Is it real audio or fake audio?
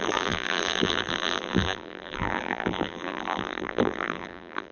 fake